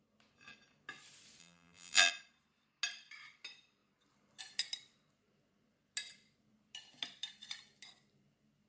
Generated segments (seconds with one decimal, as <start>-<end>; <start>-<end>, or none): 1.4-2.1